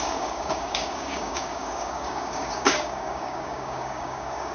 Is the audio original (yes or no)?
no